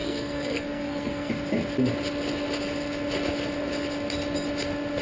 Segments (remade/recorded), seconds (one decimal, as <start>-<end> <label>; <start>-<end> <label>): 0.0-1.3 remade; 1.3-5.0 recorded